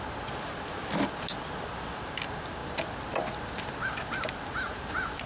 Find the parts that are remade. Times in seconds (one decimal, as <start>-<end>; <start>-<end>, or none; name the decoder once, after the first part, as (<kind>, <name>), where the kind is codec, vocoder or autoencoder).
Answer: none